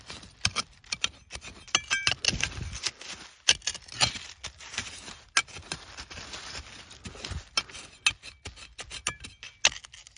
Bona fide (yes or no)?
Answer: yes